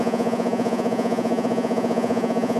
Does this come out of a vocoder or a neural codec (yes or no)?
yes